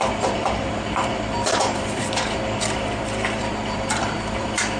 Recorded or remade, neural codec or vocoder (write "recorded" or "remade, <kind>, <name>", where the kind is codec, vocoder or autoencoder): remade, vocoder, BigVGAN v2